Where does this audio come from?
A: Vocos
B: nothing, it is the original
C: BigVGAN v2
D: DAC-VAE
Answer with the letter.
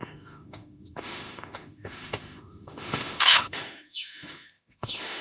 D